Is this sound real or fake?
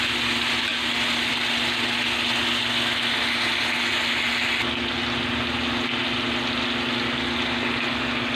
real